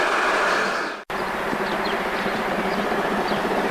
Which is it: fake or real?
real